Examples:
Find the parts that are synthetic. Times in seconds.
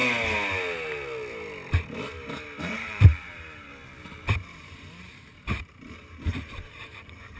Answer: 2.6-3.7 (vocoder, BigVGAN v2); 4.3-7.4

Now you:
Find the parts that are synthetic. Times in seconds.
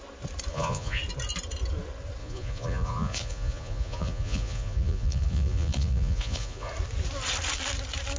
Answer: 0.5-1.0 (vocoder, Vocos); 2.2-6.7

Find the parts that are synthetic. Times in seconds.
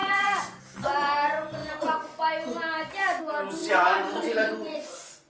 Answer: 0.0-0.6 (vocoder, Vocos); 3.6-5.3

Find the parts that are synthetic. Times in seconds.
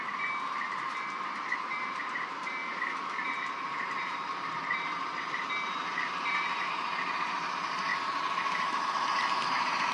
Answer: 0.0-9.9 (vocoder, BigVGAN v2)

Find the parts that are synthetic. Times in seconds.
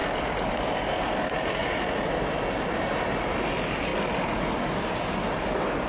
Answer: 0.0-1.0 (vocoder, BigVGAN v2)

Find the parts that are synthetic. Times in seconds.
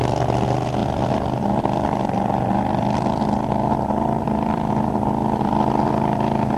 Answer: 0.8-4.8 (vocoder, BigVGAN v2)